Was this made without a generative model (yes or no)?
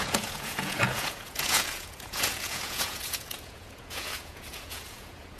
no